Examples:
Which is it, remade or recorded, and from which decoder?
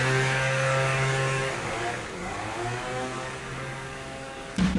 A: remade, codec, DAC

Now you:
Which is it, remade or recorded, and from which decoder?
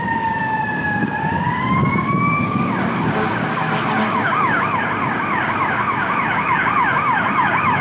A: remade, codec, DAC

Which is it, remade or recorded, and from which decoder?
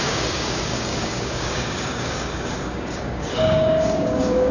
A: remade, codec, DAC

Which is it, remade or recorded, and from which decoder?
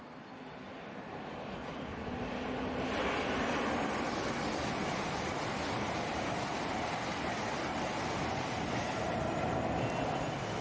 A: recorded